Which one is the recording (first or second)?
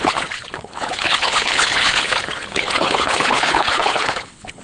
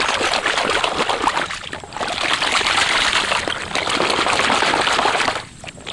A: second